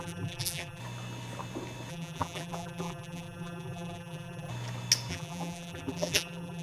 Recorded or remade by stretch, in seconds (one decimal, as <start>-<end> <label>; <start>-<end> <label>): 0.0-0.8 remade; 0.8-1.9 recorded; 1.9-4.5 remade; 4.5-5.1 recorded; 5.1-6.6 remade